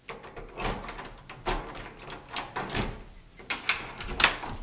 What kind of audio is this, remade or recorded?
recorded